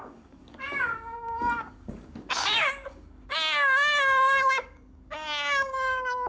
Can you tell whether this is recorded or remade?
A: remade